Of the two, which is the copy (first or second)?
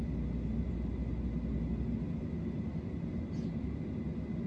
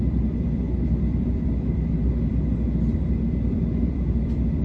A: second